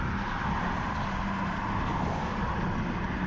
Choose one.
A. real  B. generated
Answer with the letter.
A